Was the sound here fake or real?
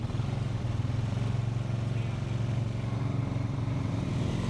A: real